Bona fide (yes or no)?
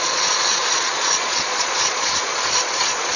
no